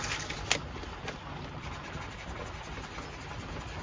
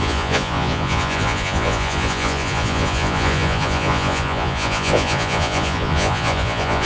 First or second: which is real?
first